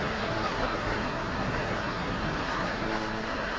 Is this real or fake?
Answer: fake